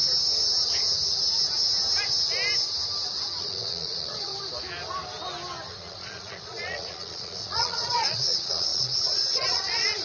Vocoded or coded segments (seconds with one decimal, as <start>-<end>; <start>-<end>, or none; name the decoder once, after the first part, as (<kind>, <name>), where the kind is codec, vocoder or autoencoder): 3.4-4.3 (vocoder, Vocos); 5.7-10.0